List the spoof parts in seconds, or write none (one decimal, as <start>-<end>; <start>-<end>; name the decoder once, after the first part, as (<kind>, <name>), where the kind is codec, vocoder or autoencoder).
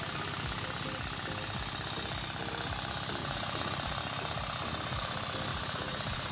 3.2-4.0 (vocoder, Vocos); 5.5-6.3